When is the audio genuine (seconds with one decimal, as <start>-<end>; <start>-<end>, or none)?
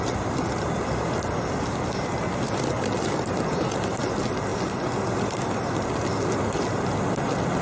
0.0-7.6